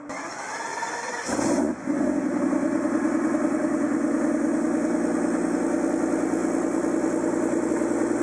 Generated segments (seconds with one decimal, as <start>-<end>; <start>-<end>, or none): 0.7-2.2